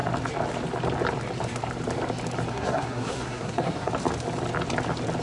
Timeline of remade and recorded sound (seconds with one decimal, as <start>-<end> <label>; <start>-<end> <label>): 0.0-2.5 recorded; 2.5-3.9 remade; 3.9-5.2 recorded